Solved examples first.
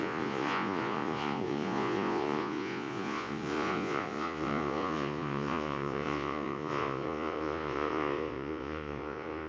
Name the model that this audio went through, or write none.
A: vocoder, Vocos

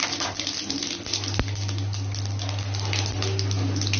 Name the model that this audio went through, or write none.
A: none